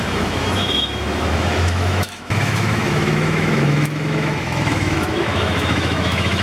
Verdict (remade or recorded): remade